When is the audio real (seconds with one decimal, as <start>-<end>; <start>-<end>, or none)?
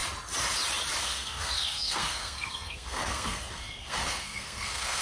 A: 0.0-1.0